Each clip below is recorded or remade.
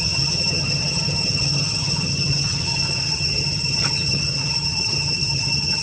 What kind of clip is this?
remade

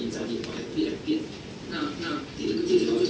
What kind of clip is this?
recorded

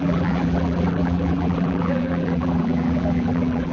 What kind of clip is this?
remade